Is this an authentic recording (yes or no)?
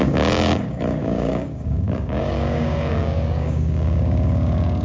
no